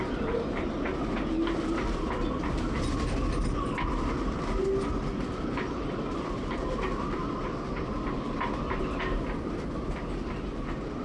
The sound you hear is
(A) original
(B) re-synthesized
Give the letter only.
A